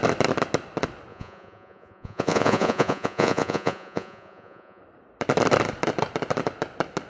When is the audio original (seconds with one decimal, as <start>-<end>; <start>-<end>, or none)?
0.0-1.1; 4.8-7.1